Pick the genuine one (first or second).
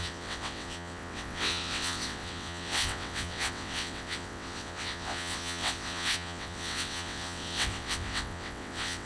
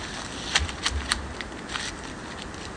second